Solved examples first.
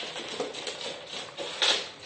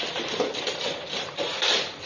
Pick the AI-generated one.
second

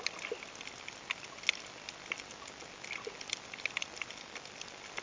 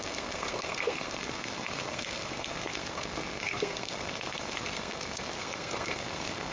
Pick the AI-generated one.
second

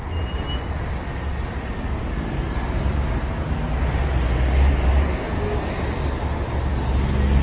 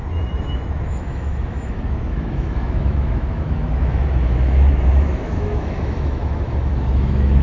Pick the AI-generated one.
second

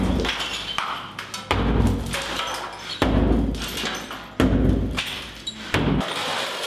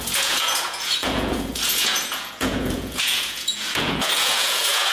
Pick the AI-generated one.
second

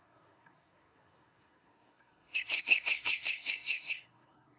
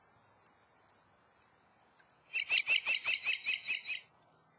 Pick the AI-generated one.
first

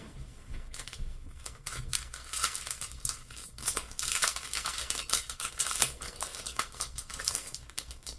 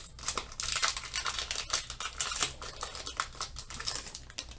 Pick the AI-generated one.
first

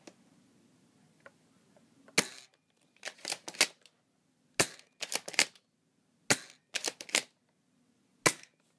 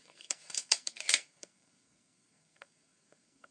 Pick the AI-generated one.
second